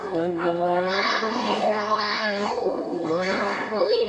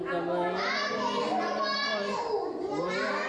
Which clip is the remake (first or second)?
first